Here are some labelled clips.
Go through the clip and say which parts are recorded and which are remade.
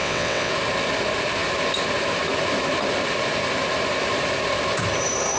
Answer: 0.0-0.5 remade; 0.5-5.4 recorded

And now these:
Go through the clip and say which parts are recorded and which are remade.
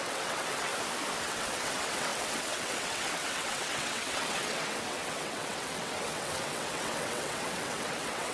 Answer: 0.0-0.7 remade; 0.7-1.2 recorded; 1.2-8.3 remade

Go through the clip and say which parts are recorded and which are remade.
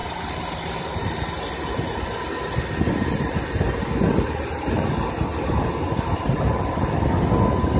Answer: 0.0-7.8 recorded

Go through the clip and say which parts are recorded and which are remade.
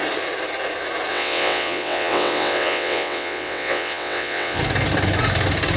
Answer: 0.0-1.1 recorded; 1.1-4.6 remade; 4.6-5.8 recorded